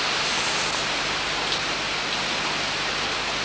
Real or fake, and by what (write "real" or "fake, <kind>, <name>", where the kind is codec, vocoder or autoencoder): real